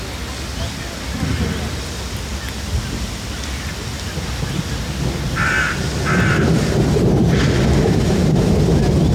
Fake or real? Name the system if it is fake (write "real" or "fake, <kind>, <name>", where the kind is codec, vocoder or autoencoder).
real